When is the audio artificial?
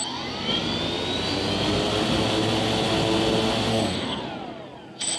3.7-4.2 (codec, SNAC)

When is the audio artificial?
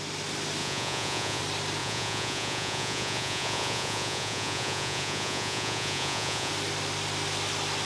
0.6-1.4 (vocoder, Vocos); 1.8-6.5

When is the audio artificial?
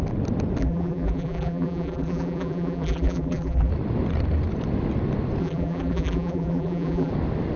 0.6-3.7 (vocoder, BigVGAN v2); 5.4-7.1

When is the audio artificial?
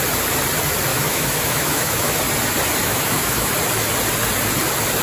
0.9-2.2 (autoencoder, DAC-VAE); 2.8-3.5